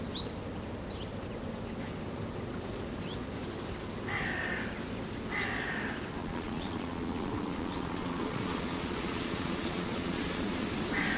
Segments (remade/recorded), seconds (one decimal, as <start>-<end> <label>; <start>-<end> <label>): 0.0-6.2 recorded; 6.2-10.7 remade; 10.7-11.2 recorded